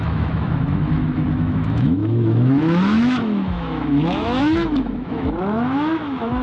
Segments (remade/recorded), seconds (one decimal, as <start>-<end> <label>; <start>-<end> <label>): 0.0-6.4 remade